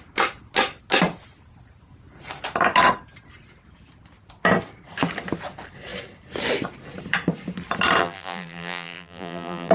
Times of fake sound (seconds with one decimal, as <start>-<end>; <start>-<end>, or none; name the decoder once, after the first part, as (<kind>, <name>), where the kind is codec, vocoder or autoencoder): 8.0-9.7 (vocoder, BigVGAN v2)